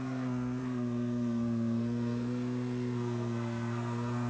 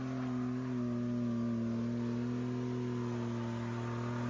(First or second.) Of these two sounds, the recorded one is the second